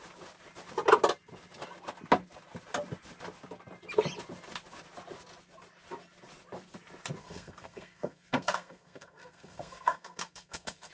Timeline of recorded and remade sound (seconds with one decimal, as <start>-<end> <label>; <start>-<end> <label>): 0.0-7.2 recorded; 7.2-10.9 remade